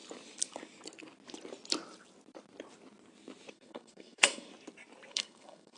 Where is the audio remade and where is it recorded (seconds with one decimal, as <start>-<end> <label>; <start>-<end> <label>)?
0.0-3.5 recorded; 3.5-4.5 remade; 4.5-5.1 recorded; 5.1-5.8 remade